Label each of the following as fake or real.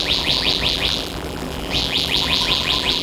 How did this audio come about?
fake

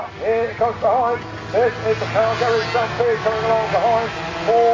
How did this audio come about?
real